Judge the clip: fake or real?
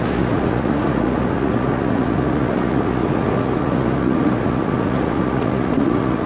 fake